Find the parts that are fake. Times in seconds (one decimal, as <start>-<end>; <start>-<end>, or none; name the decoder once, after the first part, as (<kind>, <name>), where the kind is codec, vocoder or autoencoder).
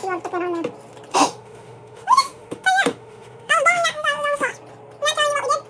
1.1-4.5 (autoencoder, DAC-VAE)